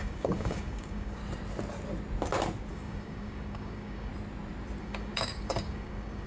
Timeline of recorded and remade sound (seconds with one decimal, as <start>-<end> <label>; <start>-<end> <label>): 0.0-1.2 remade; 1.2-2.7 recorded; 2.7-4.1 remade; 4.1-4.8 recorded; 4.8-6.3 remade